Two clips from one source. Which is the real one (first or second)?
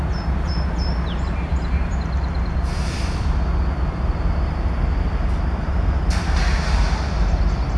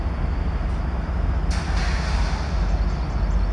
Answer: second